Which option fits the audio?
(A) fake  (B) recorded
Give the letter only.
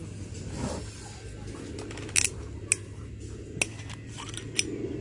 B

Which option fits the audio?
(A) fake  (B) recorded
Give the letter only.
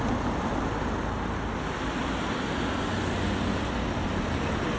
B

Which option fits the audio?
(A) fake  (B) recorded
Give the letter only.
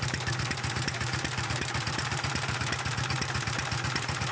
A